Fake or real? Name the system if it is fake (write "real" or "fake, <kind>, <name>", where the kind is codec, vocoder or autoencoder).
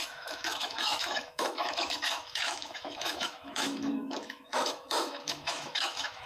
fake, autoencoder, DAC-VAE